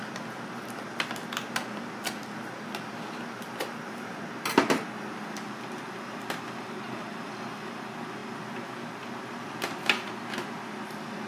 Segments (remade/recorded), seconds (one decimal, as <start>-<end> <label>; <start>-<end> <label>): 0.0-11.3 recorded